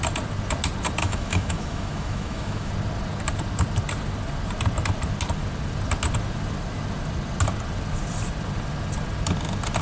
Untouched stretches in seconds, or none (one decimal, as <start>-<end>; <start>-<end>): 0.0-1.0; 2.7-9.8